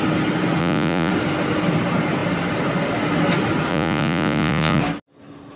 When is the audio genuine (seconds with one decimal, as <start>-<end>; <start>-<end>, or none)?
0.0-0.6; 1.1-3.7; 4.8-5.6